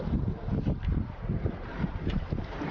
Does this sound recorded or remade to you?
recorded